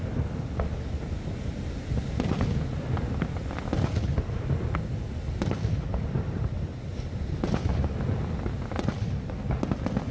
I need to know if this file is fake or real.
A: real